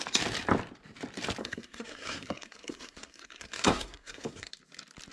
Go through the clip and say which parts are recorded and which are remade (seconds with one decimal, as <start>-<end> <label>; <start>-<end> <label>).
0.0-1.4 recorded; 1.4-4.5 remade; 4.5-5.1 recorded